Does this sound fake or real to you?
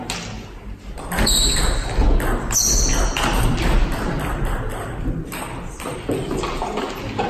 real